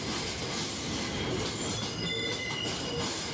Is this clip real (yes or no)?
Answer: yes